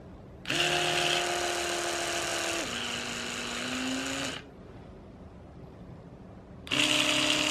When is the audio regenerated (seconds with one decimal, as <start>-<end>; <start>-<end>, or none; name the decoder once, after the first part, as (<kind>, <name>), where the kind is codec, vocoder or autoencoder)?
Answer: none